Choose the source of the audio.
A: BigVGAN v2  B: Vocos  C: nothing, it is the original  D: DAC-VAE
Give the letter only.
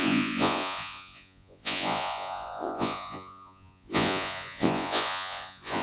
B